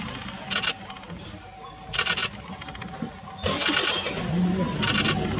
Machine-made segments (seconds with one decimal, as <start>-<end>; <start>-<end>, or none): none